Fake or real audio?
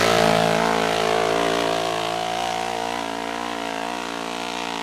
real